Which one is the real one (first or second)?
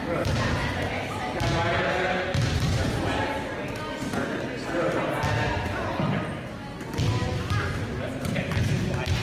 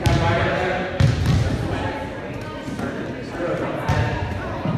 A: first